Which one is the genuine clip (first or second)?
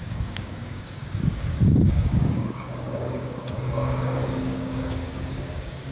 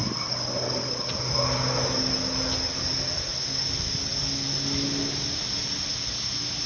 second